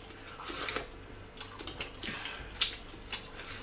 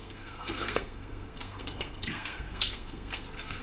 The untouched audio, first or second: first